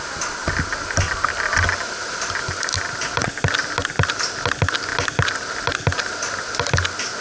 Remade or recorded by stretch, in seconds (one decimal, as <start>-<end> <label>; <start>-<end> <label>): 0.0-7.2 recorded